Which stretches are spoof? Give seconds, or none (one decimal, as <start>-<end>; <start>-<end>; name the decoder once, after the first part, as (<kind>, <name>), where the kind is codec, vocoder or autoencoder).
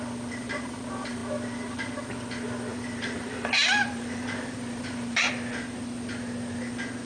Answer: 2.7-5.3 (vocoder, BigVGAN v2)